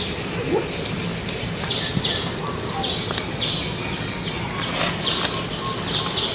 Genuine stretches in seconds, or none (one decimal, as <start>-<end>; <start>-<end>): 0.0-6.3